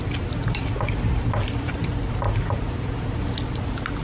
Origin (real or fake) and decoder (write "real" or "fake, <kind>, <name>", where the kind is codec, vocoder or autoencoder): real